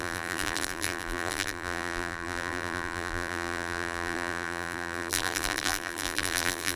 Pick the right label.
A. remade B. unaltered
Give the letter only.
A